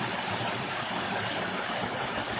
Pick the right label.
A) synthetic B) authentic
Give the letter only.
B